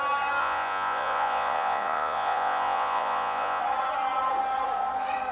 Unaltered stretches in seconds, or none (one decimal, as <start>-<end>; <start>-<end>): 0.0-0.4; 3.6-5.3